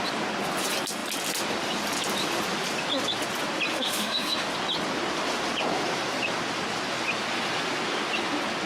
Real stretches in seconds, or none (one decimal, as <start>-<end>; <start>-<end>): 0.0-3.7; 4.5-8.7